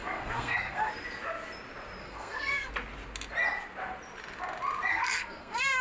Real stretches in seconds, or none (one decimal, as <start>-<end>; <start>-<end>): 0.9-2.0; 2.7-4.9